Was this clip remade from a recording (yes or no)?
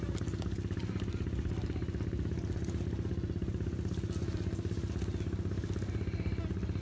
no